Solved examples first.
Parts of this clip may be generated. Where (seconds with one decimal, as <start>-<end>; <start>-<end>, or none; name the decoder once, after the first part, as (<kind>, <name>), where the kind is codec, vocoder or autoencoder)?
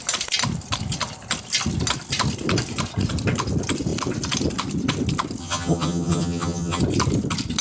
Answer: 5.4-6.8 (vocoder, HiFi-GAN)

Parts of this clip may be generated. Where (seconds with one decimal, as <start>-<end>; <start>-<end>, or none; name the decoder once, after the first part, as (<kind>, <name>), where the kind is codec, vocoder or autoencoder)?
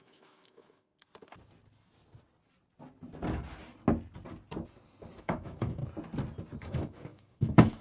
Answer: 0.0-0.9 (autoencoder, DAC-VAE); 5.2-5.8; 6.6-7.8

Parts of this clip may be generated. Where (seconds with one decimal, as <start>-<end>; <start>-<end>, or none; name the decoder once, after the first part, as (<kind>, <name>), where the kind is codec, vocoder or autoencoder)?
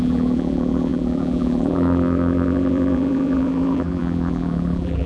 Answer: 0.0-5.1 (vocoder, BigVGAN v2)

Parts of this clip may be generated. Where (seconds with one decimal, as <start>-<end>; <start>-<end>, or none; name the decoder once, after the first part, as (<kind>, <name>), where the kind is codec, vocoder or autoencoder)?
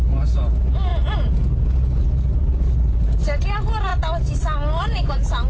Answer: none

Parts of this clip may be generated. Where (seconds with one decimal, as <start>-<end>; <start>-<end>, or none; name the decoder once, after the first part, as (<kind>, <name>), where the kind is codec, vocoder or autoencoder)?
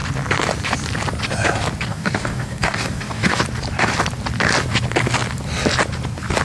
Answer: 1.9-3.4 (codec, DAC)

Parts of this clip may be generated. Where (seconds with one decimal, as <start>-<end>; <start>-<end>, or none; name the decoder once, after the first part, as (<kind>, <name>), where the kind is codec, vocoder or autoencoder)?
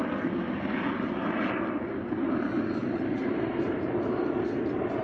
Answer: 2.8-3.7 (vocoder, BigVGAN v2)